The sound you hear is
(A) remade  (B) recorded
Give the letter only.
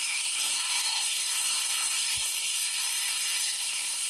A